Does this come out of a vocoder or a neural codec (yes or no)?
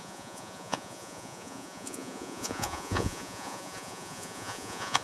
yes